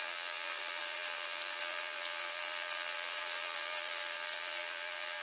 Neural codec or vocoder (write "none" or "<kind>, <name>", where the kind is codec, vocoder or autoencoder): vocoder, BigVGAN v2